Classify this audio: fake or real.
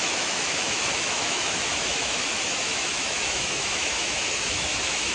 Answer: fake